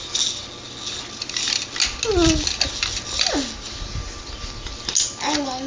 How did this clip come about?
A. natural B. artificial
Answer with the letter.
A